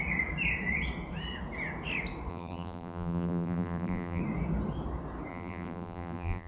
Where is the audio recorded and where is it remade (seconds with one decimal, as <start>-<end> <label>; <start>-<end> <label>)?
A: 0.0-2.3 recorded; 2.3-4.2 remade; 4.2-5.3 recorded; 5.3-6.5 remade